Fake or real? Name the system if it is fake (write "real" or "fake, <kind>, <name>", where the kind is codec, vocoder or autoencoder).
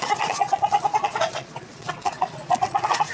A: fake, vocoder, Vocos